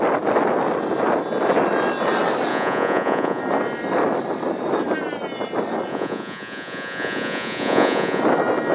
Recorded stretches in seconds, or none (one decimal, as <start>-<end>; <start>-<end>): 0.0-2.5; 3.4-5.9; 8.2-8.7